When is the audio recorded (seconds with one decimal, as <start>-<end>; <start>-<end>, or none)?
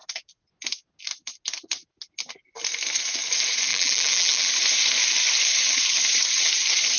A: 0.0-3.7; 4.5-7.0